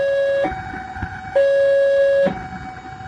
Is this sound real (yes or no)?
yes